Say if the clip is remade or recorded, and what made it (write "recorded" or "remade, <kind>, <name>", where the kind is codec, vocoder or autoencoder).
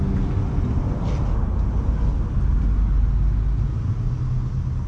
recorded